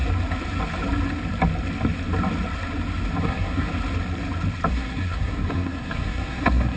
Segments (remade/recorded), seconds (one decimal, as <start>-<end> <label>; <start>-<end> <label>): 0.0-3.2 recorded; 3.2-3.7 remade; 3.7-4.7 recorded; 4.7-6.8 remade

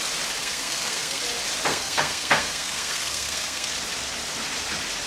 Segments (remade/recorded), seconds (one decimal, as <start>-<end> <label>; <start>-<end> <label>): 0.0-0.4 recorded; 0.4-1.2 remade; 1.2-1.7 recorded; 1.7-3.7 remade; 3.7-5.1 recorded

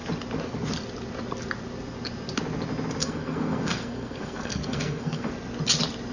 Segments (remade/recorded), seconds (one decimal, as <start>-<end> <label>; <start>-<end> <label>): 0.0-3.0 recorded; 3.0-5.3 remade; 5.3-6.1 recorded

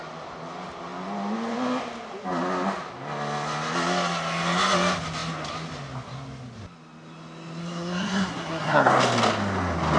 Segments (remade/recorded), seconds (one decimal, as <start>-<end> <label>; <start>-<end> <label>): 0.0-7.6 recorded; 7.6-8.9 remade; 8.9-10.0 recorded

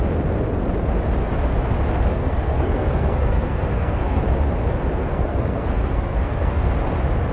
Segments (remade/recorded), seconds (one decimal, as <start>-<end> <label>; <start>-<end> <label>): 0.0-2.1 recorded; 2.1-4.2 remade; 4.2-5.0 recorded; 5.0-6.7 remade; 6.7-7.3 recorded

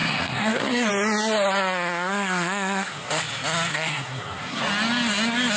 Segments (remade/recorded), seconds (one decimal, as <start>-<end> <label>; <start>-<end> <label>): 0.0-0.9 remade; 0.9-2.1 recorded; 2.1-3.2 remade; 3.2-3.7 recorded; 3.7-4.6 remade; 4.6-5.6 recorded

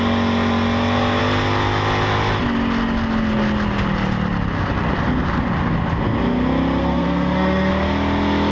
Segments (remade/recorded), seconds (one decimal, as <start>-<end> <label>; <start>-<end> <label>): 0.0-6.8 recorded; 6.8-7.7 remade; 7.7-8.5 recorded

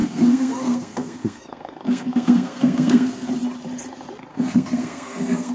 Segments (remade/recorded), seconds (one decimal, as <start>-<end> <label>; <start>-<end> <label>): 0.0-3.3 remade; 3.3-4.3 recorded; 4.3-5.5 remade